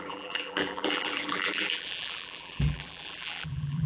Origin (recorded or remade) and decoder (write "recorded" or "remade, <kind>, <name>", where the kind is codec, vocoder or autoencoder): remade, vocoder, BigVGAN v2